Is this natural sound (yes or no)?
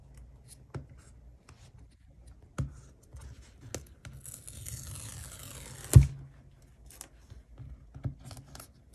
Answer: yes